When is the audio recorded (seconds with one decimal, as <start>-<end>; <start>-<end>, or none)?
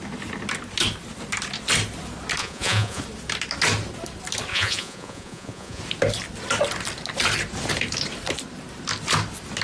0.0-2.4; 3.0-4.5; 5.8-9.6